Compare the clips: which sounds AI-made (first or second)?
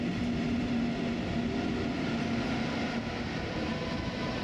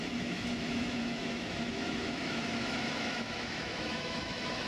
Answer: second